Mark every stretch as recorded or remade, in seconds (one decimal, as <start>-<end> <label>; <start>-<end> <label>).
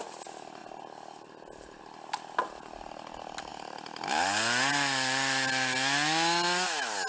0.0-7.1 recorded